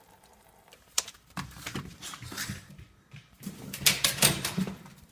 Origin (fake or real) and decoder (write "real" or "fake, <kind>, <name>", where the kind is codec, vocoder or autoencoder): fake, vocoder, BigVGAN v2